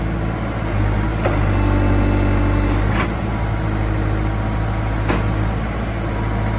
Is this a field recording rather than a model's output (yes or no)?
yes